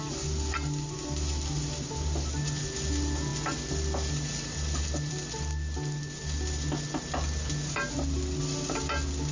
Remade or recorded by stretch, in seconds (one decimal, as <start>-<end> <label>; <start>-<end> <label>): 0.0-9.3 recorded